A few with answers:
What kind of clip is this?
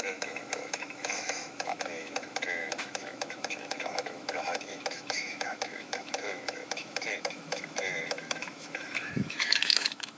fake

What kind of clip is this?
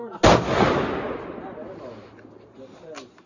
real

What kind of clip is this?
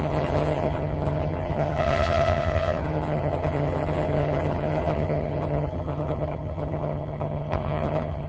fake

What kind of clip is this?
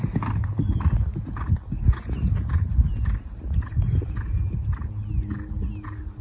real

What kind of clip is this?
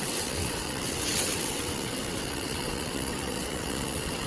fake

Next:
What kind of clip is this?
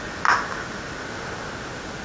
real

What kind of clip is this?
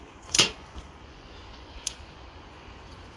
fake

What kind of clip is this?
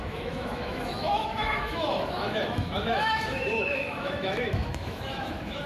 fake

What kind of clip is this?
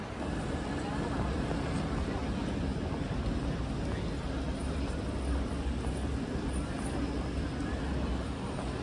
real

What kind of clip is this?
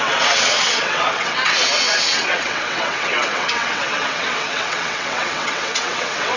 fake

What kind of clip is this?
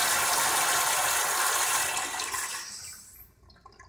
real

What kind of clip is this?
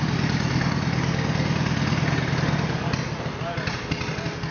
real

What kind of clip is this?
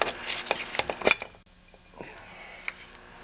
real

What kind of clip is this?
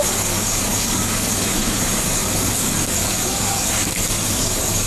fake